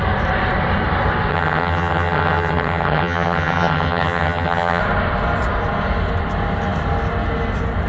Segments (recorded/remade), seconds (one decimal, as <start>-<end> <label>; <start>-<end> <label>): 0.0-1.3 recorded; 1.3-4.8 remade; 4.8-7.9 recorded